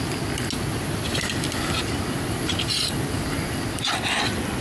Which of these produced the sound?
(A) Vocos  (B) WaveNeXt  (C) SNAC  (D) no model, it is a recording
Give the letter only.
D